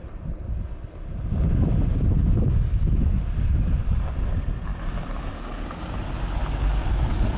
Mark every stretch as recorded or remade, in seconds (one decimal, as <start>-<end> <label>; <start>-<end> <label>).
0.0-1.9 recorded; 1.9-3.2 remade; 3.2-7.4 recorded